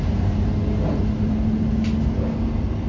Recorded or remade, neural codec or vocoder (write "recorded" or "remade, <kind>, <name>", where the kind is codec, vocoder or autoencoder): recorded